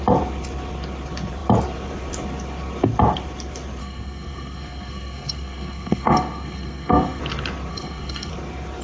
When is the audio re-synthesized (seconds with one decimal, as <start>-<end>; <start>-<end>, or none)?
3.8-7.2; 7.7-8.3